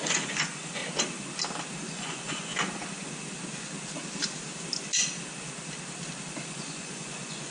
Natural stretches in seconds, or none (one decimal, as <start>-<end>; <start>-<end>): 0.8-1.8; 2.5-6.5